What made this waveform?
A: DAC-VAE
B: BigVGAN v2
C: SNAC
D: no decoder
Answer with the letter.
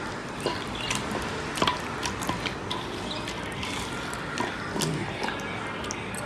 D